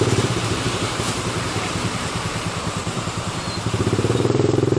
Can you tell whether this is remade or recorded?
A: remade